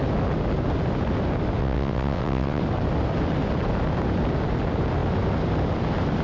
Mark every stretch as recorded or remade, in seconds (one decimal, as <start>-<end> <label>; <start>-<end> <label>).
0.0-1.6 recorded; 1.6-2.6 remade; 2.6-6.2 recorded